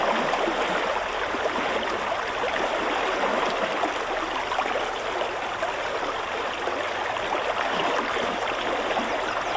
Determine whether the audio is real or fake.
real